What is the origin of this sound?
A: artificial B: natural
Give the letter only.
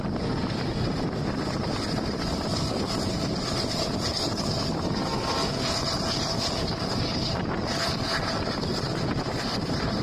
A